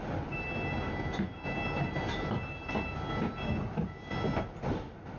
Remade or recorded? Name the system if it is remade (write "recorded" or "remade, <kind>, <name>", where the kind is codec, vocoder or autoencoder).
recorded